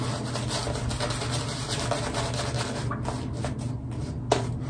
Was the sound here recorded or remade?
recorded